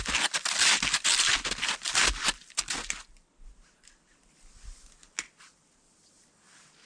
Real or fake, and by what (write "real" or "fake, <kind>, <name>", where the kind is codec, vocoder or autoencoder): real